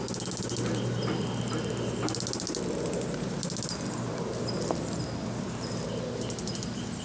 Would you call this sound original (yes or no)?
yes